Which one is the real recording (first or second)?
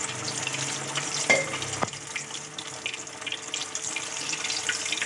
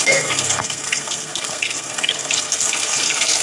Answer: first